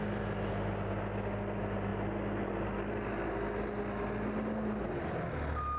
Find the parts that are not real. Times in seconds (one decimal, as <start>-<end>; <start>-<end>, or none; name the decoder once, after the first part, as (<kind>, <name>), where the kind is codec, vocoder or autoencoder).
none